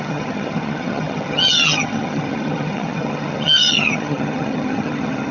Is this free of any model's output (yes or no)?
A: no